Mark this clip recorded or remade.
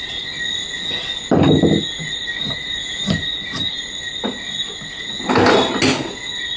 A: recorded